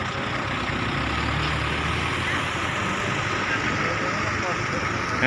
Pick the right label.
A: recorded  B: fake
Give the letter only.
A